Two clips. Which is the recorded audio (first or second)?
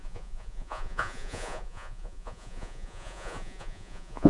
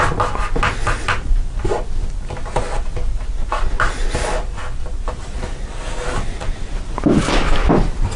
second